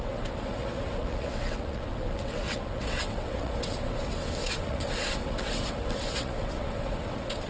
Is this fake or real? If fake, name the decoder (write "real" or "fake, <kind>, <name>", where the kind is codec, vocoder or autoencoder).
fake, vocoder, WaveNeXt